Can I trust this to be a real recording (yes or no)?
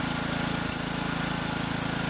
yes